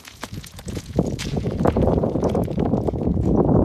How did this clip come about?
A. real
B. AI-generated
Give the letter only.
B